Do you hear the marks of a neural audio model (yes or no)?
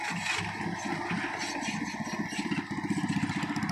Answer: no